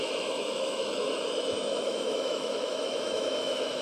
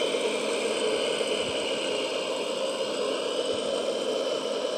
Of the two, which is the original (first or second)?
second